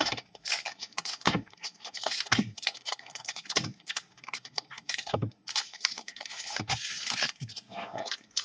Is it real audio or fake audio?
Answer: fake